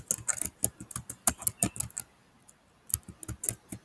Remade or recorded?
recorded